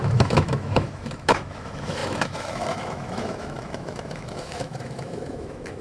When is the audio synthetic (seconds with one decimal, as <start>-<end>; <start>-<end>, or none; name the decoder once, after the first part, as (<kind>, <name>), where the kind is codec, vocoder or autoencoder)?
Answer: 0.0-5.8 (autoencoder, DAC-VAE)